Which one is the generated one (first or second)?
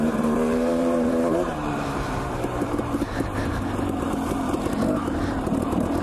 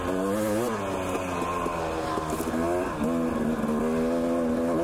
first